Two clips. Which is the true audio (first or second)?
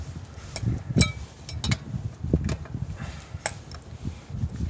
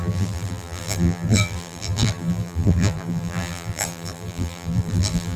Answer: first